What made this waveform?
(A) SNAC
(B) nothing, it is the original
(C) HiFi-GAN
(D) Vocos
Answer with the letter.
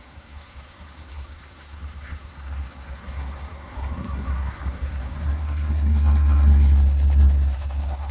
A